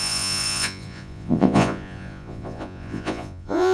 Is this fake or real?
fake